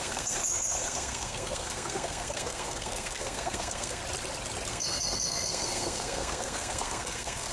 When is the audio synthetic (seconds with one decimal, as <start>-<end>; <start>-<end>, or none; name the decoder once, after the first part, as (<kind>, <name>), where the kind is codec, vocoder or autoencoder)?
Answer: 0.0-4.0 (codec, SNAC); 4.7-7.5